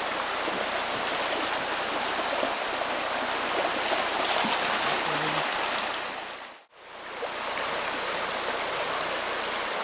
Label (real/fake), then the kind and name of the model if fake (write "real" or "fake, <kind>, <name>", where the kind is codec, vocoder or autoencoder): real